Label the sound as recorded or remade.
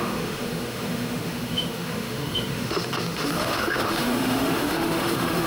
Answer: remade